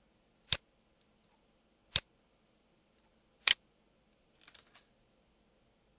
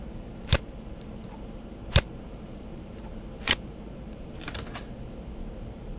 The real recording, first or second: first